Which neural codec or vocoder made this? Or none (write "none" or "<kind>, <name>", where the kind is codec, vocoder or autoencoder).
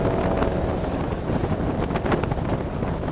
none